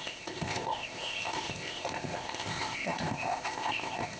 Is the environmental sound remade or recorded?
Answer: remade